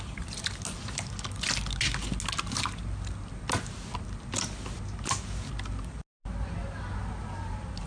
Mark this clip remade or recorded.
recorded